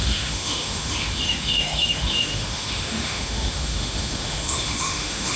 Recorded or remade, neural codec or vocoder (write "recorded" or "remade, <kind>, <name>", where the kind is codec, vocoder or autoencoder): remade, autoencoder, DAC-VAE